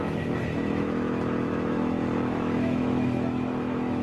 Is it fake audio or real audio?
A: fake